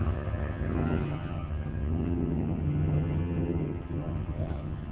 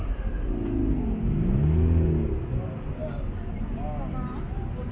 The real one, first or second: second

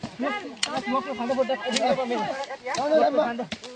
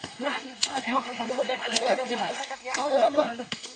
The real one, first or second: first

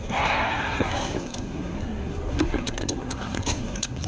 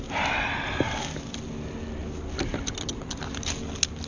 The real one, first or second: second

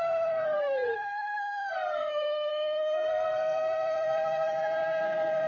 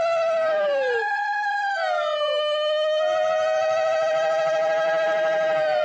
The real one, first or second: second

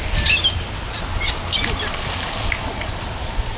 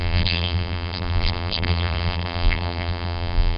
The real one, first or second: first